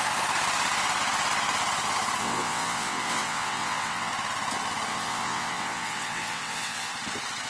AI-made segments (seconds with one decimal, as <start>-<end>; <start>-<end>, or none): 2.2-4.1; 4.9-6.9